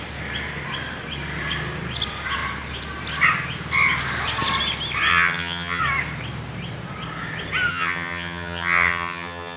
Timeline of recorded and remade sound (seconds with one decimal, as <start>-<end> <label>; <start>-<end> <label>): 0.0-5.1 recorded; 5.1-5.8 remade; 5.8-7.7 recorded; 7.7-9.6 remade

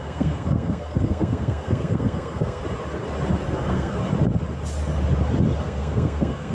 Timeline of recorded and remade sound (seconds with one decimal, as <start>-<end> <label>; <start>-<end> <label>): 0.0-2.6 remade; 2.6-3.6 recorded; 3.6-4.0 remade; 4.0-5.6 recorded; 5.6-6.5 remade

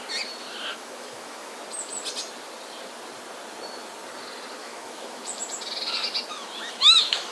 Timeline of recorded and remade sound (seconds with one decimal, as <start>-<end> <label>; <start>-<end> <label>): 0.0-0.7 recorded; 0.7-1.6 remade; 1.6-4.6 recorded; 4.6-5.2 remade; 5.2-6.3 recorded; 6.3-7.3 remade

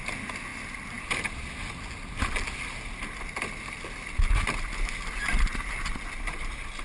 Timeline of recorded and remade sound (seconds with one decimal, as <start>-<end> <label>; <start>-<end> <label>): 0.0-6.8 recorded

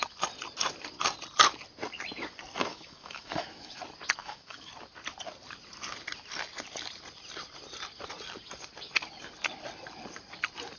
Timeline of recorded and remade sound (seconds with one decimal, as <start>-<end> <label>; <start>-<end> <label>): 0.0-2.7 recorded; 2.7-3.8 remade; 3.8-4.2 recorded; 4.2-4.7 remade; 4.7-10.8 recorded

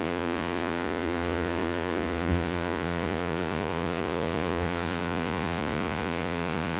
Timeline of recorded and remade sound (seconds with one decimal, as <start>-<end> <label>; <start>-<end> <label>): 0.0-6.8 remade

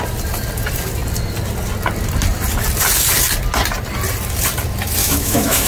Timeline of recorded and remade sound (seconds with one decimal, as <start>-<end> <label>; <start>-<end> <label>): 0.0-5.0 recorded; 5.0-5.7 remade